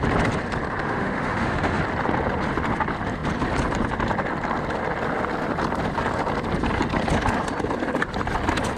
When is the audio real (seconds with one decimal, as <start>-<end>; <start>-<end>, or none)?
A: 0.0-0.8; 1.8-8.8